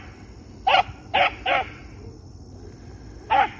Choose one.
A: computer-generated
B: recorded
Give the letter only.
B